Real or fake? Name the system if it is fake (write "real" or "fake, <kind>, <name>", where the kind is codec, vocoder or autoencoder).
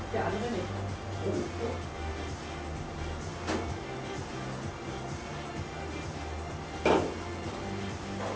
real